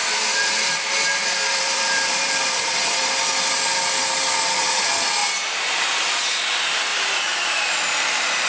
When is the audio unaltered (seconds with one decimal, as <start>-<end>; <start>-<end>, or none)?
3.2-5.2; 6.2-6.9